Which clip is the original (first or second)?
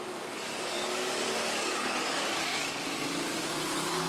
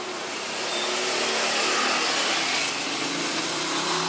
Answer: second